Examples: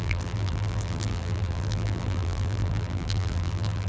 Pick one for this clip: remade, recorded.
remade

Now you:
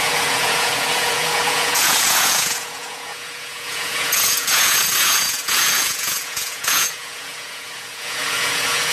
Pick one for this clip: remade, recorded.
remade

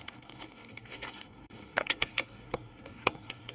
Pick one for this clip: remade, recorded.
remade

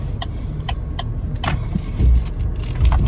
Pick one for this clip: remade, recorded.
recorded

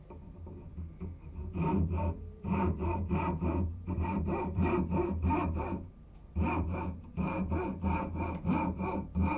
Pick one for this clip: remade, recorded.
remade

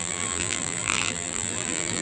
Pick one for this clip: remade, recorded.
remade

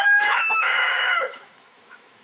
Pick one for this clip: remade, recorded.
remade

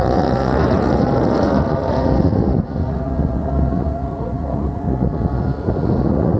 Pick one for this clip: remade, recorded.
remade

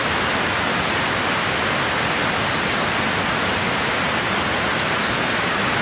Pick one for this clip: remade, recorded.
recorded